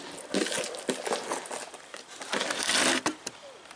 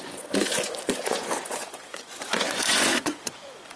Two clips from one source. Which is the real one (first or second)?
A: first